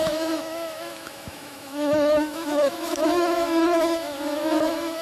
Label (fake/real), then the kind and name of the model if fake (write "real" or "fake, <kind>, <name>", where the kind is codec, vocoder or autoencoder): fake, autoencoder, DAC-VAE